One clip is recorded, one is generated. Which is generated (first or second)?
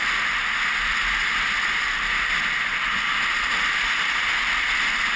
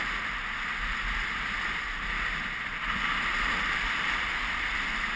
second